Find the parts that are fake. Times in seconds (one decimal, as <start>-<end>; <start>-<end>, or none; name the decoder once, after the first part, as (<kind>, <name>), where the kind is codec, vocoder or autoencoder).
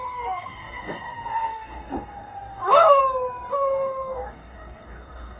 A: 0.0-3.0 (codec, DAC); 3.5-5.4